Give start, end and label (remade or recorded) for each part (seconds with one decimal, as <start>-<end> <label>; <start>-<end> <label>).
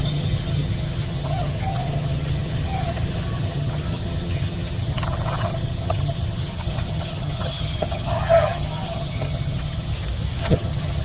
0.0-9.9 remade; 9.9-10.4 recorded; 10.4-11.0 remade